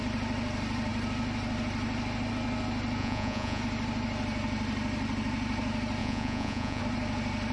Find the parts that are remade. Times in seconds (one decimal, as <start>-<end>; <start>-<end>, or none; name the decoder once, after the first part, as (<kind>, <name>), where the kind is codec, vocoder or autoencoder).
3.0-3.6 (vocoder, Vocos); 6.0-6.8